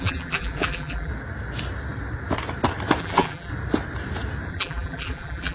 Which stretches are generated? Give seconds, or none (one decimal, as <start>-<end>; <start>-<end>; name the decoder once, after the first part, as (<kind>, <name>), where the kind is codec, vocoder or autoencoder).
0.0-1.1 (vocoder, BigVGAN v2); 3.0-3.5; 4.5-5.5